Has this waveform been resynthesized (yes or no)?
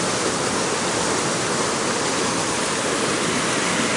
no